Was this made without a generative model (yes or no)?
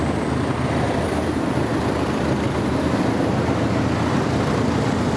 yes